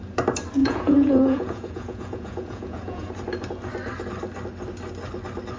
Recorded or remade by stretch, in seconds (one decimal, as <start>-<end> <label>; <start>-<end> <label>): 0.0-0.6 recorded; 0.6-3.1 remade; 3.1-5.6 recorded